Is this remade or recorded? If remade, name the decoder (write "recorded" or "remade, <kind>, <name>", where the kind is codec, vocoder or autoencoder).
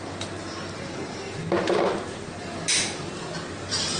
recorded